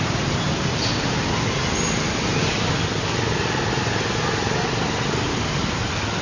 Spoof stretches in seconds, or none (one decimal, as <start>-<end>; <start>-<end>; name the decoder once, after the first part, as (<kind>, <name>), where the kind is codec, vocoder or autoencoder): none